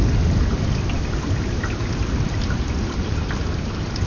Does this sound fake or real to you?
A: real